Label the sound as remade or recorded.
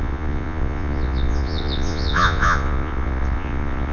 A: remade